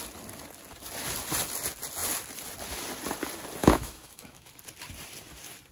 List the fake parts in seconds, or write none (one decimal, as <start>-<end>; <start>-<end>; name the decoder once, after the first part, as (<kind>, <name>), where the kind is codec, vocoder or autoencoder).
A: 3.6-4.5 (autoencoder, DAC-VAE)